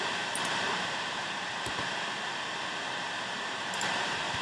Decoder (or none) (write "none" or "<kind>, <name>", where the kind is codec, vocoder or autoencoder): vocoder, BigVGAN v2